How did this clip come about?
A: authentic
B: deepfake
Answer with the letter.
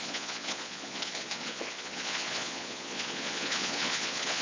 B